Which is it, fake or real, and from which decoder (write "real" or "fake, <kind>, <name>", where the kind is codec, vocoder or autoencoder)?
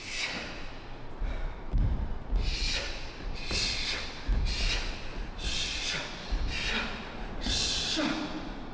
real